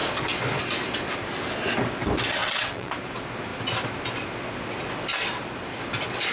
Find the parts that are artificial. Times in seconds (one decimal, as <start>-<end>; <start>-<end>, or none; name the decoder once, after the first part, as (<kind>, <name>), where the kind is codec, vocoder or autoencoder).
2.4-2.9 (vocoder, WaveNeXt)